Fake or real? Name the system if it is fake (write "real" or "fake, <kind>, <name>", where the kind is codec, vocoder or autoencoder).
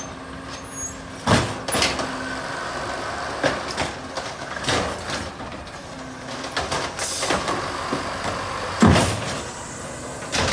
real